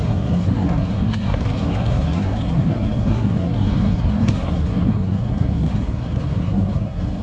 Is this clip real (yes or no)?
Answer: no